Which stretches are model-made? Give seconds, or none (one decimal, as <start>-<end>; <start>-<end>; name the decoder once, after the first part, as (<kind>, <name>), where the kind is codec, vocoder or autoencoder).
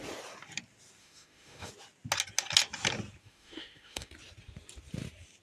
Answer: 1.0-1.7 (autoencoder, DAC-VAE); 3.2-4.1